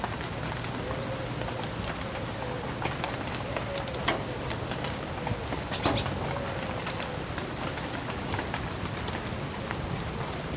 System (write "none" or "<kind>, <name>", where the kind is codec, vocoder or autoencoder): none